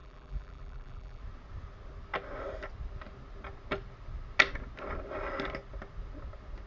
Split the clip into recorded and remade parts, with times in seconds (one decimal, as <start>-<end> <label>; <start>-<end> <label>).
0.0-1.2 remade; 1.2-6.7 recorded